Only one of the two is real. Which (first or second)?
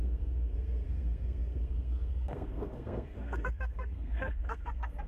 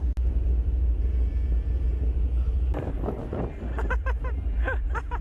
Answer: second